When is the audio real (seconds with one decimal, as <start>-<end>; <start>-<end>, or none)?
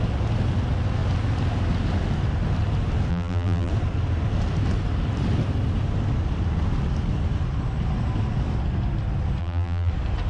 0.0-3.1; 3.7-9.4; 9.9-10.3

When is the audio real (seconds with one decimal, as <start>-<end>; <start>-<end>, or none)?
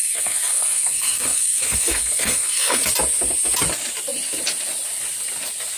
2.8-5.8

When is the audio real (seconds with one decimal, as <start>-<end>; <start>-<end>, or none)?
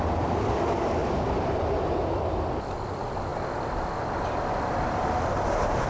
0.0-1.0; 1.7-5.9